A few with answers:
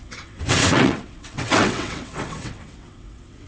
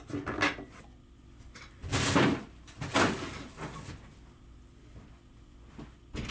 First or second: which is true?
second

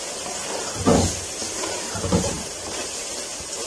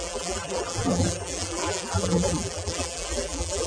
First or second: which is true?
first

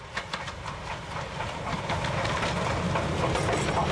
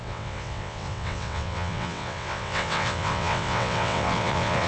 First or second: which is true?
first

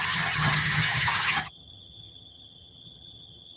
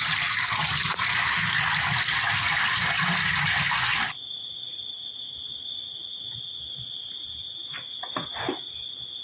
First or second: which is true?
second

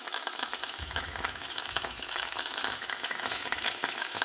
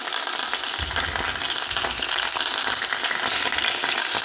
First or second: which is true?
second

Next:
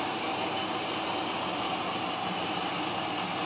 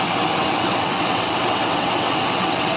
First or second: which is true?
first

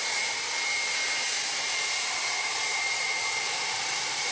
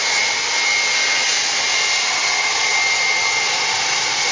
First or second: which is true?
second